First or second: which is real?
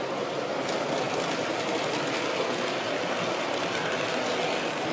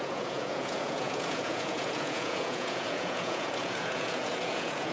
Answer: first